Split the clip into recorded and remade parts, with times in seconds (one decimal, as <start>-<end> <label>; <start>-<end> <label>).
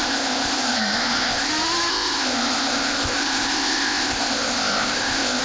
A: 0.0-1.5 remade; 1.5-1.9 recorded; 1.9-5.4 remade